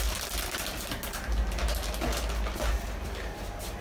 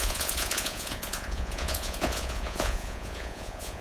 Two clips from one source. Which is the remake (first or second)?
second